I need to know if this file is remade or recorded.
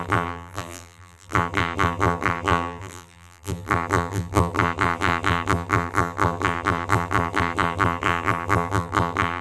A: remade